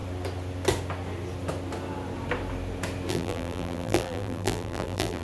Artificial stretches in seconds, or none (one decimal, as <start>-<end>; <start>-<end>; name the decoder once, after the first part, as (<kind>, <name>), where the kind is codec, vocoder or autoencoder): 3.1-5.2 (vocoder, BigVGAN v2)